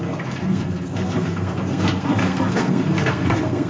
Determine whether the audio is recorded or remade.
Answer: remade